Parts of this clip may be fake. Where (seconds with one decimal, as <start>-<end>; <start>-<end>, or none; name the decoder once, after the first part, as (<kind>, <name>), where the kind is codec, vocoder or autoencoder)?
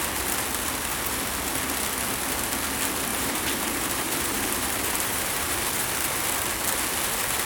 3.1-5.9 (vocoder, BigVGAN v2)